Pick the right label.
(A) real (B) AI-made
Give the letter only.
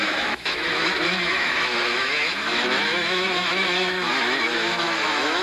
B